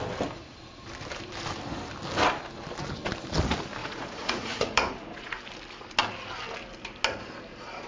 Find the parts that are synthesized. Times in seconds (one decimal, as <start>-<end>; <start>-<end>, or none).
3.8-5.4